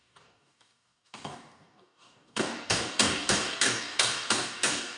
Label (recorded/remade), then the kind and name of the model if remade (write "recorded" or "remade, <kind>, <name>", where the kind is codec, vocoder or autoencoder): remade, codec, DAC